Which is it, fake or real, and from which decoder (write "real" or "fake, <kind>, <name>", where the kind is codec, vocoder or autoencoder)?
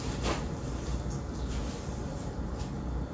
real